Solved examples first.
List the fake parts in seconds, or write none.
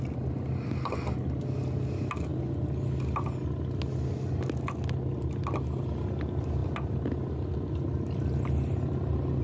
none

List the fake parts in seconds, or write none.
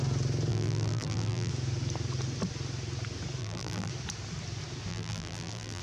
0.5-1.5 (vocoder, BigVGAN v2); 3.4-3.9; 4.9-5.8